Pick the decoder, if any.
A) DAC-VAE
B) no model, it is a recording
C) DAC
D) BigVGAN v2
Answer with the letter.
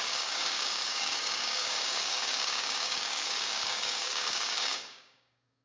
C